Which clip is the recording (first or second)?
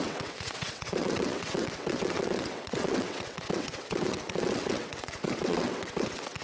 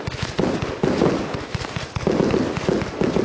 second